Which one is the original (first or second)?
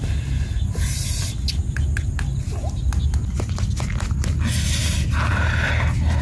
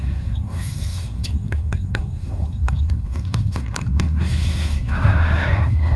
first